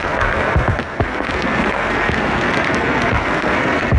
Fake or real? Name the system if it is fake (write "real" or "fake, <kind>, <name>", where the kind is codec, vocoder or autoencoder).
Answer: fake, codec, SNAC